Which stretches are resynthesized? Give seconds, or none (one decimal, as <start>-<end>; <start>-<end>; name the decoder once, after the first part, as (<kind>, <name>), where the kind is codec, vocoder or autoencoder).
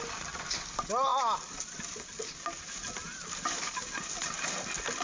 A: none